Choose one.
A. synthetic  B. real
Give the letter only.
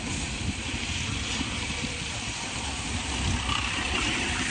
A